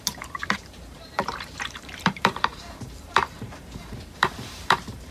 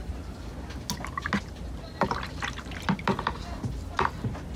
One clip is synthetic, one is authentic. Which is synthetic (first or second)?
first